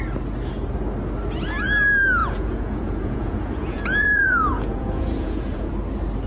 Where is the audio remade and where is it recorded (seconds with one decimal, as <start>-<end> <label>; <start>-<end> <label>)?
0.0-2.2 recorded; 2.2-5.7 remade; 5.7-6.3 recorded